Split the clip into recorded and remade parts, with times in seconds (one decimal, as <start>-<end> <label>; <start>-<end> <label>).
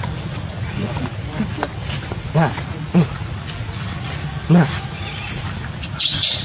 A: 0.0-1.1 remade; 1.1-2.1 recorded; 2.1-6.4 remade